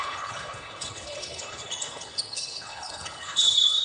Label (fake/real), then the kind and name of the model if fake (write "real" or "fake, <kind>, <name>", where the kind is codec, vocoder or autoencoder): fake, codec, HILCodec